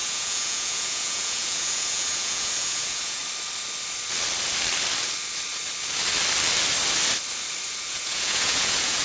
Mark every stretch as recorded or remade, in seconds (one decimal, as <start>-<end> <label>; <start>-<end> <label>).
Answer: 0.0-3.2 remade; 3.2-7.9 recorded; 7.9-9.0 remade